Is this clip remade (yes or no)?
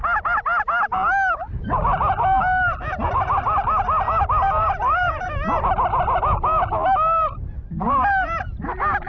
no